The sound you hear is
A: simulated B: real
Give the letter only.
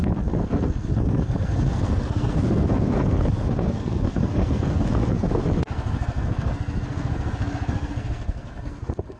A